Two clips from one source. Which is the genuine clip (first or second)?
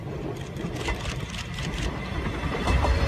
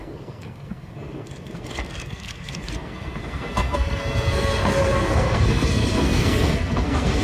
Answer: first